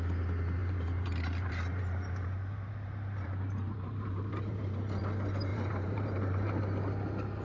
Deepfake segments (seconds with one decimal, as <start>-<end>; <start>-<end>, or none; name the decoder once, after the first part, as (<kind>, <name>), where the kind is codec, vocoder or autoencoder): 0.6-5.0 (vocoder, BigVGAN v2); 5.5-6.6